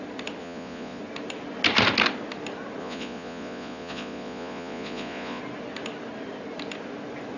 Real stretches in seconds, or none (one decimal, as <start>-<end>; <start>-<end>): 0.0-0.4; 1.0-2.8; 5.4-7.4